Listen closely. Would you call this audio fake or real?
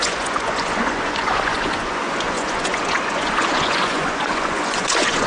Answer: fake